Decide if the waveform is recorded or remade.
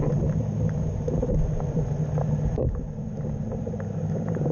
remade